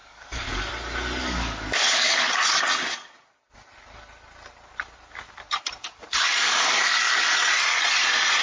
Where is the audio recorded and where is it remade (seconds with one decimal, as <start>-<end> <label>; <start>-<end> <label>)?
0.0-0.7 remade; 0.7-1.2 recorded; 1.2-2.2 remade; 2.2-5.8 recorded; 5.8-7.3 remade; 7.3-8.4 recorded

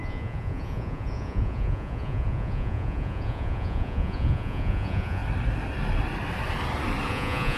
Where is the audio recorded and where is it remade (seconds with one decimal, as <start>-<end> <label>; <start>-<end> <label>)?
0.0-5.2 remade; 5.2-7.1 recorded; 7.1-7.6 remade

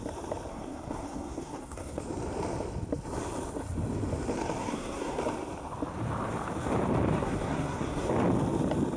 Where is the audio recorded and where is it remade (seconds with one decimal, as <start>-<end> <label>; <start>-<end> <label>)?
0.0-0.5 recorded; 0.5-2.0 remade; 2.0-4.6 recorded; 4.6-5.2 remade; 5.2-7.1 recorded; 7.1-8.1 remade; 8.1-9.0 recorded